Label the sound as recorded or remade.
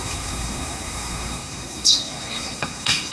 remade